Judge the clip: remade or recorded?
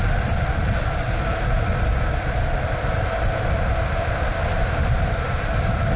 recorded